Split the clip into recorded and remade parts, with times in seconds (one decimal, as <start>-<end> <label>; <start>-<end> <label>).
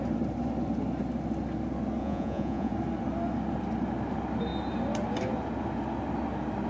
0.0-2.0 recorded; 2.0-2.7 remade; 2.7-6.7 recorded